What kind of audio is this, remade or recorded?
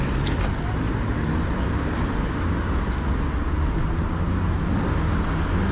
recorded